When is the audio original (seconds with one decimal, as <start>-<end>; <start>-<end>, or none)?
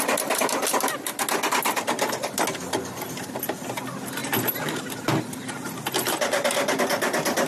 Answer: 0.0-7.5